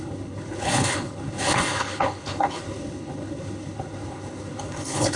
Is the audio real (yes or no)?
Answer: no